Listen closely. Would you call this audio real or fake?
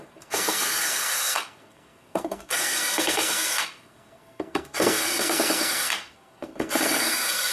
fake